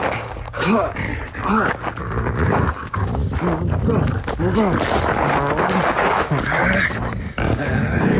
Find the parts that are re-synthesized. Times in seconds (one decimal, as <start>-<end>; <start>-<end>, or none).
0.0-1.1; 2.0-3.2; 5.6-6.6; 7.2-8.2